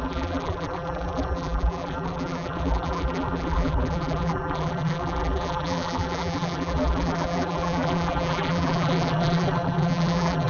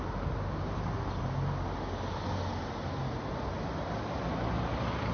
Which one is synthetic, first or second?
first